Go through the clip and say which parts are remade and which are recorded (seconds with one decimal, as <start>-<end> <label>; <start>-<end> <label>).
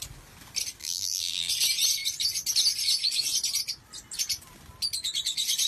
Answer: 0.0-0.8 recorded; 0.8-1.5 remade; 1.5-5.7 recorded